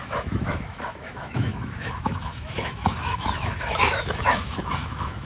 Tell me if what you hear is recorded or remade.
remade